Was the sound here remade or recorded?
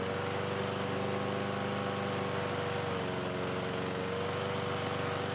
recorded